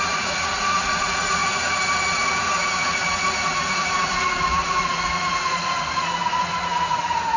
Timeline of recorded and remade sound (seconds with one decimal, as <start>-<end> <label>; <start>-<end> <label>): 0.0-7.4 remade